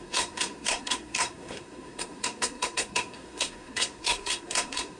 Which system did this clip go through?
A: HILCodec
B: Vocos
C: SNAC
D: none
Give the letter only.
C